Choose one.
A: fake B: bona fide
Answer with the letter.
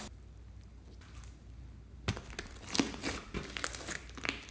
B